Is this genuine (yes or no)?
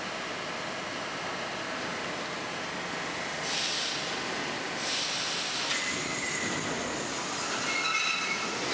yes